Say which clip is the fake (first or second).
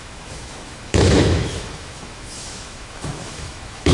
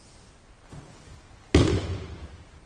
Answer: first